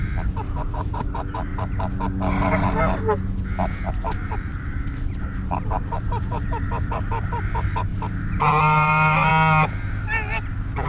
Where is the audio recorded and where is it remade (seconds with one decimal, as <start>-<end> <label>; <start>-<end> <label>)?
0.0-1.5 remade; 1.5-3.9 recorded; 3.9-4.5 remade; 4.5-5.2 recorded; 5.2-7.9 remade; 7.9-8.5 recorded; 8.5-9.3 remade; 9.3-10.5 recorded; 10.5-10.9 remade